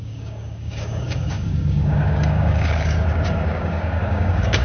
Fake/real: fake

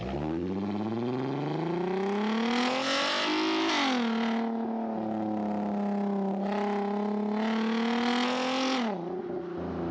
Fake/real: real